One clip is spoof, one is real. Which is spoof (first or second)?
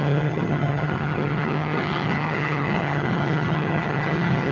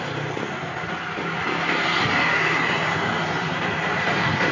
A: first